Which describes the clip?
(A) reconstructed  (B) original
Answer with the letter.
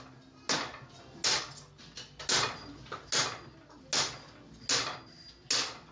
B